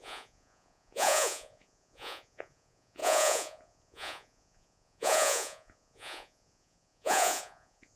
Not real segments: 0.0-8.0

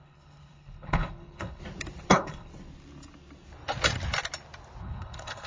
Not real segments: 0.0-1.6; 2.1-2.5; 4.8-5.5

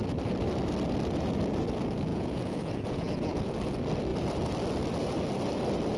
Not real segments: 2.1-3.4

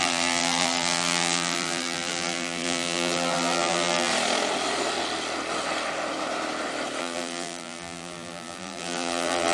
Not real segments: 0.0-4.1; 7.0-9.5